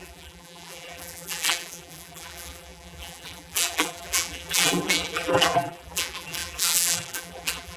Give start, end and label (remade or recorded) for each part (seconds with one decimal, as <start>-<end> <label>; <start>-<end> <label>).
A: 0.0-7.8 remade